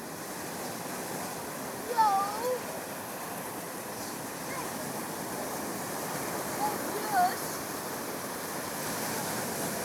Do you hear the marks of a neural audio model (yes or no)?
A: yes